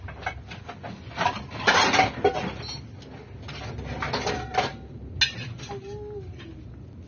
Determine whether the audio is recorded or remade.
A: recorded